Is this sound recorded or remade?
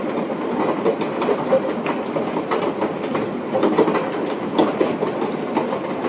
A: recorded